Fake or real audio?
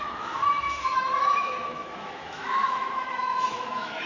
fake